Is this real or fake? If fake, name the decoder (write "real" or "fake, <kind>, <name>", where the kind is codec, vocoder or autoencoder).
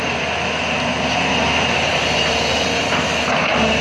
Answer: real